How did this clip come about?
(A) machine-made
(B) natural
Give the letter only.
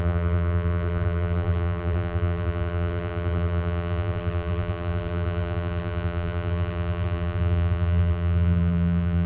A